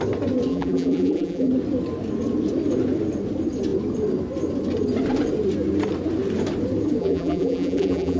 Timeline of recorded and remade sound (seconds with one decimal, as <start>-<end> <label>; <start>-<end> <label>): 0.0-0.5 recorded; 0.5-1.5 remade; 1.5-7.0 recorded; 7.0-8.2 remade